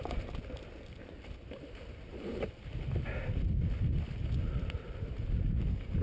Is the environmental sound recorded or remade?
recorded